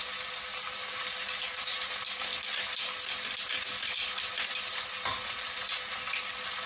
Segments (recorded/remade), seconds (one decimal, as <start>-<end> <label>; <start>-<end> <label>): 0.0-6.7 recorded